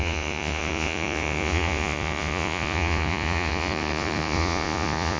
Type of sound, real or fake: fake